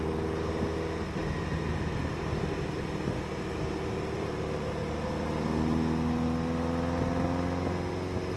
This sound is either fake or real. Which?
real